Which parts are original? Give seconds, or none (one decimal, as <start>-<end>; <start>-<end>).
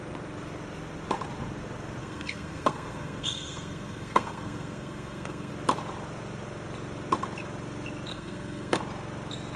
0.0-2.0; 5.5-8.1; 8.8-9.6